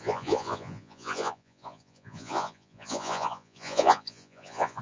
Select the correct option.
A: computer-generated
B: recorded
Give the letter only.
A